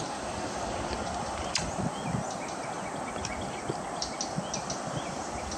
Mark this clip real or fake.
real